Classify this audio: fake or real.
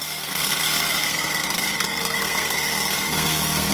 fake